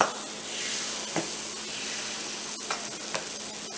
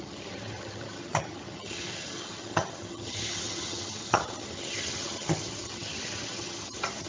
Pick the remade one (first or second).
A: second